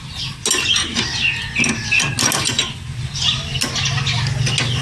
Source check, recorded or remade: recorded